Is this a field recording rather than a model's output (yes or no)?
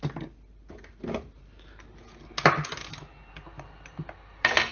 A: yes